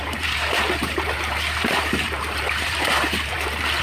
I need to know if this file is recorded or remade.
remade